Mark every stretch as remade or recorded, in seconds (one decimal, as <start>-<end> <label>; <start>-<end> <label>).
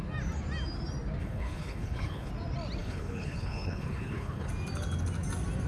0.0-1.2 recorded; 1.2-2.3 remade; 2.3-2.8 recorded; 2.8-4.5 remade; 4.5-5.7 recorded